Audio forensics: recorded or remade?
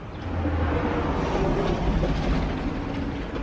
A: recorded